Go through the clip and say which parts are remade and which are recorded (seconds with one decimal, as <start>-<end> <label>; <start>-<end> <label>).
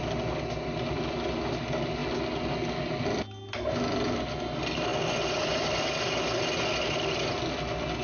0.0-8.0 recorded